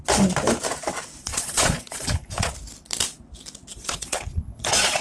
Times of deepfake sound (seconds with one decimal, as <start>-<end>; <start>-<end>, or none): 1.2-2.5; 3.7-5.0